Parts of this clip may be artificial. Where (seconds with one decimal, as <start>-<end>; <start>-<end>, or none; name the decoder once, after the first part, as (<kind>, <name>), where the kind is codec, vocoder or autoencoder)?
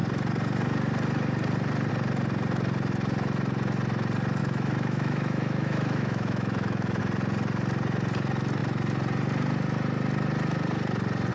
4.4-7.0 (autoencoder, DAC-VAE)